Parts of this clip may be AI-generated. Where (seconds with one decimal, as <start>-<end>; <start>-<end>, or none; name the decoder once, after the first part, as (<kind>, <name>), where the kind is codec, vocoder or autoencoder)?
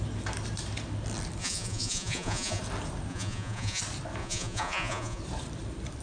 1.4-2.6 (vocoder, Vocos); 3.1-3.8; 4.2-5.2